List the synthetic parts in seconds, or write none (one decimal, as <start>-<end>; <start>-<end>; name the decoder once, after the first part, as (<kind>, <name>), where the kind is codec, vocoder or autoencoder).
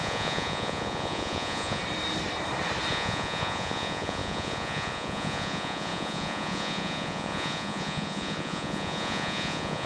0.0-1.8 (vocoder, Vocos); 2.9-9.9